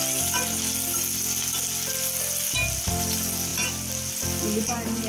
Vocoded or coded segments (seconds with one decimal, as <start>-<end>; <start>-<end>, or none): none